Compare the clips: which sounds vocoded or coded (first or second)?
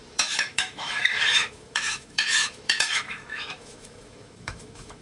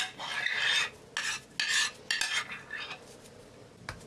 first